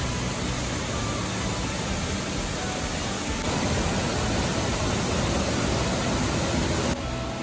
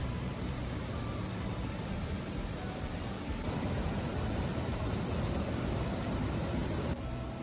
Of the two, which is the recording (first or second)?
first